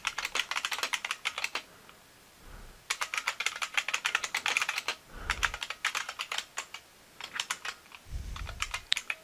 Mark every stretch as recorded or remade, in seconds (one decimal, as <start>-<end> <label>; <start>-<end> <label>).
0.0-9.2 recorded

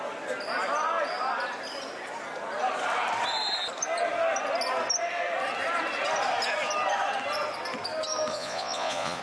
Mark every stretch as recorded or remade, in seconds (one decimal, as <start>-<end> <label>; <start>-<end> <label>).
0.0-8.3 recorded; 8.3-9.2 remade

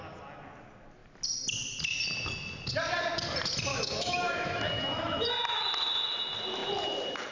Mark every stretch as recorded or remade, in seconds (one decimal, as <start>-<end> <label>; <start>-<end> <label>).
0.0-3.7 recorded; 3.7-5.3 remade; 5.3-7.3 recorded

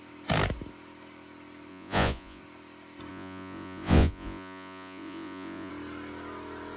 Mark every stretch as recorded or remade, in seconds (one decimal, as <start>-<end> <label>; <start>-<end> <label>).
0.0-1.7 recorded; 1.7-2.4 remade; 2.4-3.1 recorded; 3.1-5.7 remade; 5.7-6.8 recorded

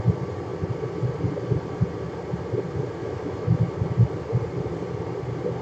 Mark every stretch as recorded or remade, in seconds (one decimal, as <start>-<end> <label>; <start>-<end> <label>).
0.0-3.0 recorded; 3.0-3.6 remade; 3.6-5.6 recorded

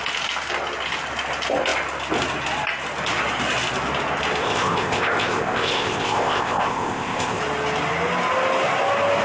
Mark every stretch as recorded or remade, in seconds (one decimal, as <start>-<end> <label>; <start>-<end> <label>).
0.0-4.4 recorded; 4.4-7.4 remade; 7.4-9.2 recorded

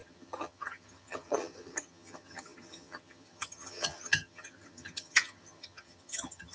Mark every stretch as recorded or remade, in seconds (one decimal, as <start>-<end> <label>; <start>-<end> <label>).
0.0-6.5 remade